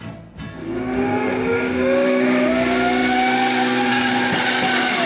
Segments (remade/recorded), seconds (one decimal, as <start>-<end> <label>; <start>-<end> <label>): 0.0-0.6 recorded; 0.6-2.5 remade; 2.5-5.1 recorded